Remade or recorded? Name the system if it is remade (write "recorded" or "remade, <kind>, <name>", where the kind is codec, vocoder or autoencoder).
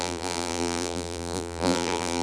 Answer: remade, vocoder, BigVGAN v2